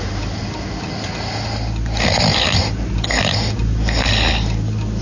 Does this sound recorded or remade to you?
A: recorded